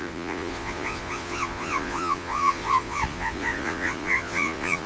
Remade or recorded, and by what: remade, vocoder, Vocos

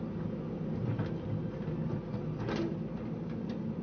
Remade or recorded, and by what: recorded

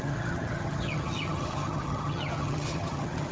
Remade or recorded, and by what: remade, vocoder, HiFi-GAN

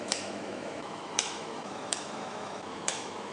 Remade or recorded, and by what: remade, autoencoder, DAC-VAE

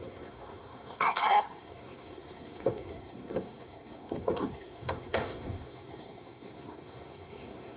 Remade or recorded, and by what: remade, codec, SNAC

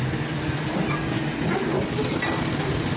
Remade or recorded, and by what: recorded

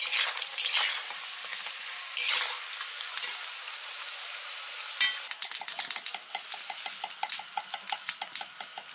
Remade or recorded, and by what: recorded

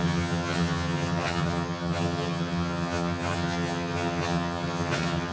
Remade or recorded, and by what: remade, vocoder, HiFi-GAN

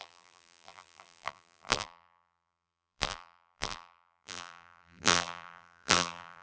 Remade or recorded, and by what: remade, vocoder, BigVGAN v2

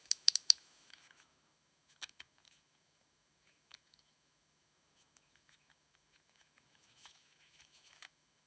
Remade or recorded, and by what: remade, autoencoder, DAC-VAE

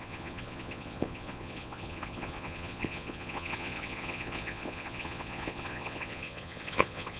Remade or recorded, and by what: remade, vocoder, Vocos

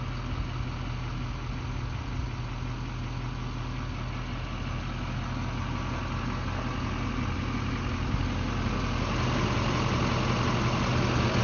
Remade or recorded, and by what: recorded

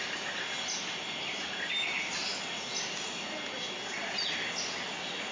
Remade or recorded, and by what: recorded